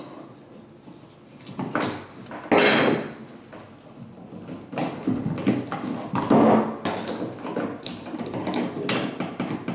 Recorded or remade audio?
recorded